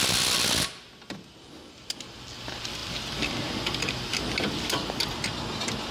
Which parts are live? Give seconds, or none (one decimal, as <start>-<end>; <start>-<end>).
0.0-5.9